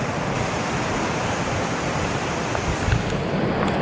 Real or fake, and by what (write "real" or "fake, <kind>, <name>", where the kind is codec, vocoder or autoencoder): real